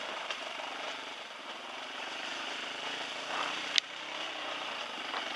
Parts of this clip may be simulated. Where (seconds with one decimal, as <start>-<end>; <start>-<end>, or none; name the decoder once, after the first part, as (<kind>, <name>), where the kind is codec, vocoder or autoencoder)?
0.0-5.4 (vocoder, BigVGAN v2)